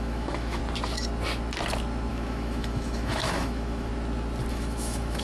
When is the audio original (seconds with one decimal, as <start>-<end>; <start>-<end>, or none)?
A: 0.6-2.1; 3.9-4.5